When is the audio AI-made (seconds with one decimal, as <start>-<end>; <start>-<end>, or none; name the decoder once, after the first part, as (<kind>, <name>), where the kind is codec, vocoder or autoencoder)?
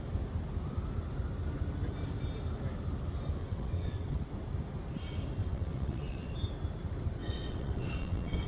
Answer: 3.4-4.3 (vocoder, WaveNeXt); 5.4-6.3; 7.2-8.5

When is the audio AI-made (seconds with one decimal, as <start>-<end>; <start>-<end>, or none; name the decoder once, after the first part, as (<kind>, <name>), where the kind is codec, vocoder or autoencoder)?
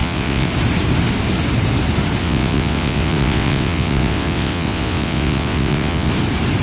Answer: 0.0-0.5 (vocoder, WaveNeXt); 2.2-6.1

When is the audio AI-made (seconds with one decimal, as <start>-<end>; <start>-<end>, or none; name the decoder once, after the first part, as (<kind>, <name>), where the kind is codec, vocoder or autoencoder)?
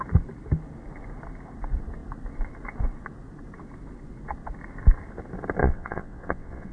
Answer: 5.6-6.7 (vocoder, WaveNeXt)